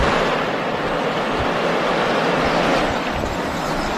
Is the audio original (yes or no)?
yes